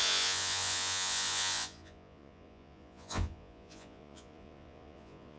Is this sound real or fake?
fake